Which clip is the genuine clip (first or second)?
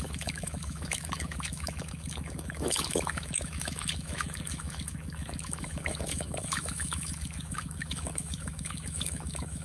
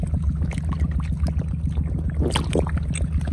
second